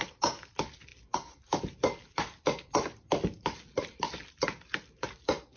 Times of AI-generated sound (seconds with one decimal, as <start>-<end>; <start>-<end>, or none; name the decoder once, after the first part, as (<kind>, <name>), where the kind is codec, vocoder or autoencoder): none